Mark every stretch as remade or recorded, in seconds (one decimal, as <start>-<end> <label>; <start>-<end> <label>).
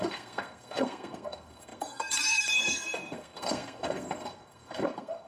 0.0-5.3 remade